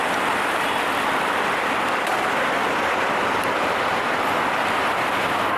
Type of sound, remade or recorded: remade